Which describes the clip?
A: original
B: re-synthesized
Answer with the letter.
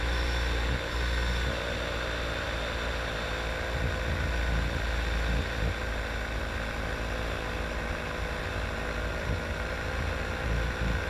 A